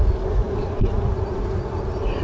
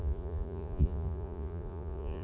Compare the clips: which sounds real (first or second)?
first